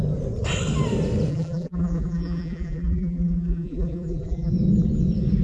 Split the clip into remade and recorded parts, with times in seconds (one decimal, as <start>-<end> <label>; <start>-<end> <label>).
0.0-1.3 recorded; 1.3-4.5 remade; 4.5-5.4 recorded